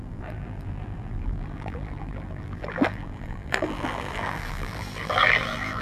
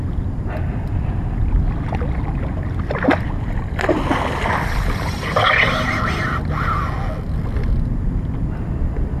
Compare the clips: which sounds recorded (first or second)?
second